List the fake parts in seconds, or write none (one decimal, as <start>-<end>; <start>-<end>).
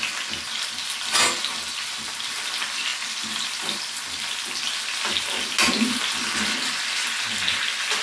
none